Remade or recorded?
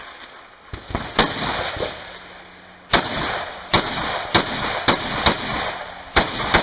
recorded